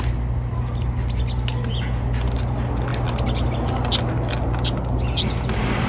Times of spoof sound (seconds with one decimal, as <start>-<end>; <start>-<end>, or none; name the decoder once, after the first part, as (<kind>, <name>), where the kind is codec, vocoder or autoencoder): none